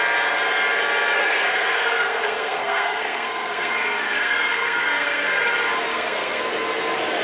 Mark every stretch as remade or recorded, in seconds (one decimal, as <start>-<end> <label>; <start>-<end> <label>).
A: 0.0-1.2 recorded; 1.2-5.5 remade; 5.5-5.9 recorded; 5.9-6.4 remade; 6.4-7.2 recorded